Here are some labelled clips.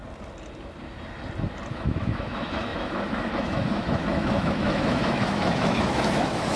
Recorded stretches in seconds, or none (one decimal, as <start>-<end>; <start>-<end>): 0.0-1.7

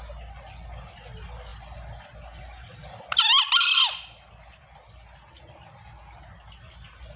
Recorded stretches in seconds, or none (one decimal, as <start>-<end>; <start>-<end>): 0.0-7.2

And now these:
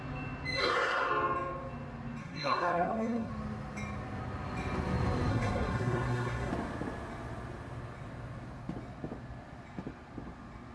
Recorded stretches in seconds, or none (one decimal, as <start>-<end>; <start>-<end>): 0.0-0.6; 1.1-2.2; 3.3-5.3; 6.5-10.7

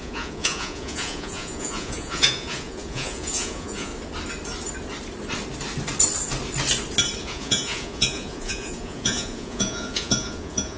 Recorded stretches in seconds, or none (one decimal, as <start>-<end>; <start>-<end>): 3.9-7.2

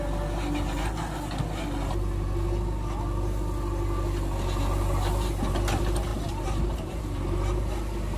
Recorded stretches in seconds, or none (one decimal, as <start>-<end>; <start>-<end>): 0.0-6.1; 7.0-8.2

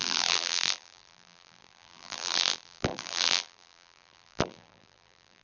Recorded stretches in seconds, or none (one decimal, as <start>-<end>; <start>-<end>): none

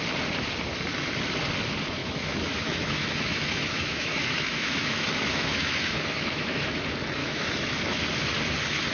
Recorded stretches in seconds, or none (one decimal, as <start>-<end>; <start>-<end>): 0.0-2.0; 6.8-7.2; 8.0-8.9